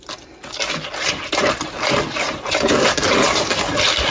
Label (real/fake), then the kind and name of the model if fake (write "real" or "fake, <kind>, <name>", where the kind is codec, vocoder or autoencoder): real